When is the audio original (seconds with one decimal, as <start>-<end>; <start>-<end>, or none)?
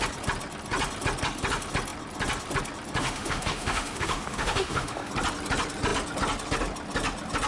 0.0-3.0; 5.1-7.5